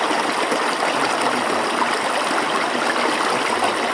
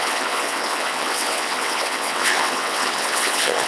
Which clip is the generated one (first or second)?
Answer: second